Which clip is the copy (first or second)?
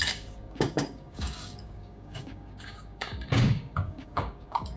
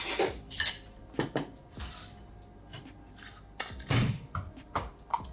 first